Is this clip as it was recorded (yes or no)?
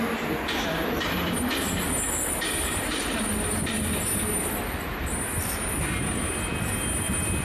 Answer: yes